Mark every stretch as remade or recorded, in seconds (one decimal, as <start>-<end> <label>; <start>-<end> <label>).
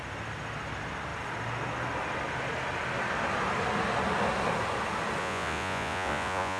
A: 0.0-5.2 recorded; 5.2-6.6 remade